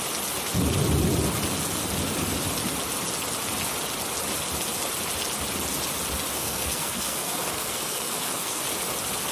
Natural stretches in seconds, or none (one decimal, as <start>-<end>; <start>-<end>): 0.0-6.3; 8.6-9.3